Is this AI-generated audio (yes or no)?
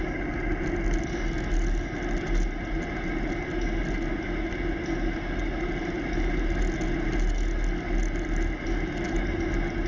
no